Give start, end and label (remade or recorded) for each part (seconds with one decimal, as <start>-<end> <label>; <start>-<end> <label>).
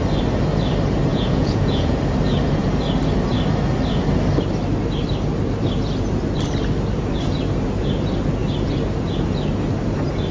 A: 0.0-1.1 recorded; 1.1-2.0 remade; 2.0-10.3 recorded